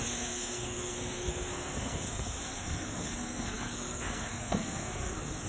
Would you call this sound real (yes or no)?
no